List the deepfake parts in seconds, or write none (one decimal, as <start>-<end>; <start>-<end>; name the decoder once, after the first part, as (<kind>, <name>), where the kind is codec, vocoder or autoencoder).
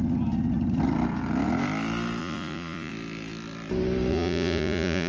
2.2-2.9 (vocoder, Vocos); 4.1-5.1